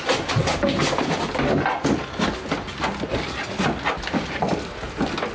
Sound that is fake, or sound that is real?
real